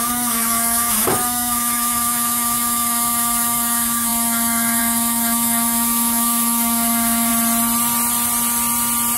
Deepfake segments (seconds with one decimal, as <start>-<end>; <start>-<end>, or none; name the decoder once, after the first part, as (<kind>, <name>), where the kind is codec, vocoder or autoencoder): 0.0-7.3 (autoencoder, DAC-VAE)